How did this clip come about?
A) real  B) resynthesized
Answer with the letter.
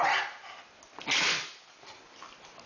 A